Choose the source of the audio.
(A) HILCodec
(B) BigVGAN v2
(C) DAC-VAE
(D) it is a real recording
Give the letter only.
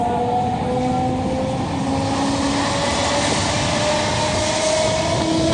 D